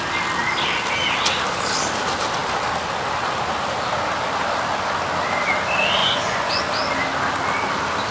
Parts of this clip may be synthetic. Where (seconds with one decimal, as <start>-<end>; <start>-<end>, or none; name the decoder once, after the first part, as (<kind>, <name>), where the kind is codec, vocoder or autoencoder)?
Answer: 6.0-6.6 (vocoder, Vocos)